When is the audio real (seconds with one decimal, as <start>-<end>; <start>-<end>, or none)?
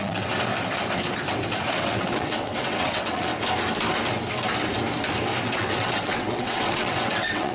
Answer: 0.5-1.7; 3.3-5.4